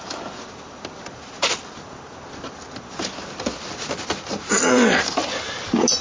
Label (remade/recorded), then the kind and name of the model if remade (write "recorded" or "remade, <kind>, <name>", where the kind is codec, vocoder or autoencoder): recorded